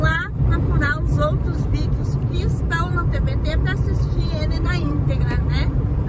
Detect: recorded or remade remade